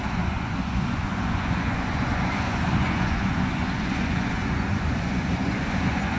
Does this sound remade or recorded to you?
remade